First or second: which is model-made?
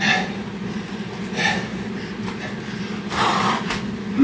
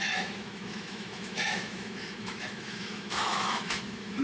second